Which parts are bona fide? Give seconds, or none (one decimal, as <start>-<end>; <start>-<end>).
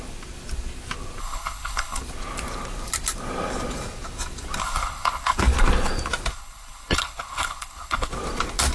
0.0-1.2; 2.0-4.6; 5.4-6.3; 8.1-8.7